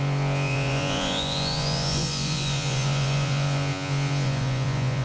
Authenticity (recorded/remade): remade